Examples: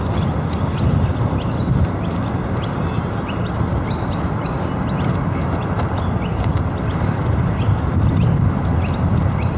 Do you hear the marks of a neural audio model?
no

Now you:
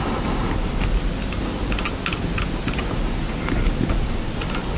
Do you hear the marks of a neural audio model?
no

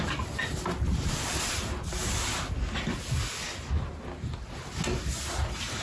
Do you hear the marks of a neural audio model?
no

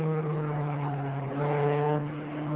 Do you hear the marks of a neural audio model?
yes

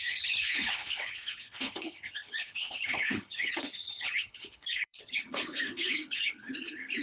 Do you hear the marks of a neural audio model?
yes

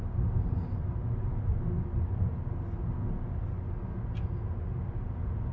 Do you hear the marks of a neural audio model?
no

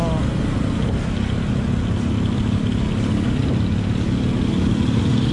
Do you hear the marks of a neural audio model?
no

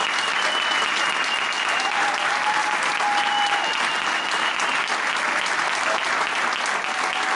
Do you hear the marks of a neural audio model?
no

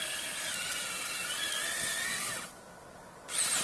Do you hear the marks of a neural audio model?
no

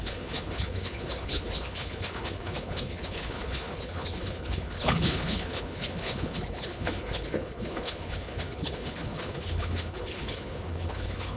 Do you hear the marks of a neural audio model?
yes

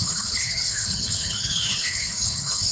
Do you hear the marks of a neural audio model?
yes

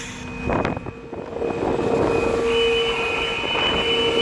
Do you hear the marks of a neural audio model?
no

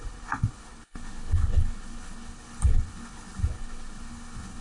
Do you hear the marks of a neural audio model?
yes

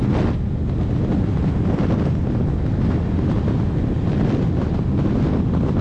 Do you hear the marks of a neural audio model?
no